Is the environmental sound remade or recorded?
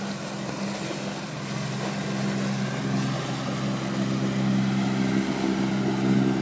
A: recorded